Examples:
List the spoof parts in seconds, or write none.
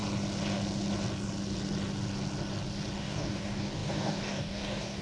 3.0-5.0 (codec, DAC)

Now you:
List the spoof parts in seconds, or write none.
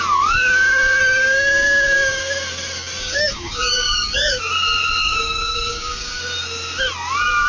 1.0-2.2 (codec, DAC); 3.0-4.4; 5.0-6.2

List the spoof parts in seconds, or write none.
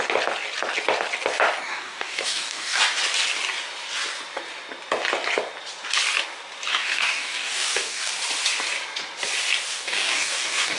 1.7-2.8 (codec, DAC); 6.7-8.1; 9.7-10.8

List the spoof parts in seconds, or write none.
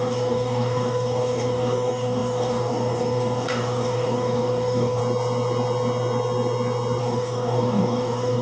0.0-5.0 (codec, DAC); 7.0-8.4